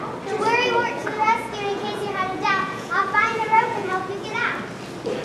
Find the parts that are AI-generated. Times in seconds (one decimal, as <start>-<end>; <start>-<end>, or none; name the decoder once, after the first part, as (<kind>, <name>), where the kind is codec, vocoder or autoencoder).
1.0-4.1 (vocoder, Vocos)